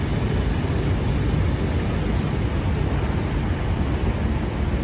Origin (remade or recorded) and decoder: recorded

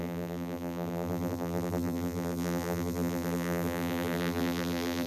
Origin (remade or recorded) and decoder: remade, vocoder, BigVGAN v2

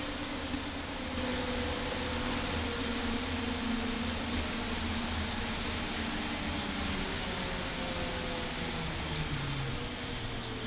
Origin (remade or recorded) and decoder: recorded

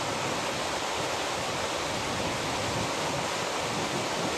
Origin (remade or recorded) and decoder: recorded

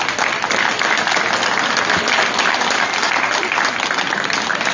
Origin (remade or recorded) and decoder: recorded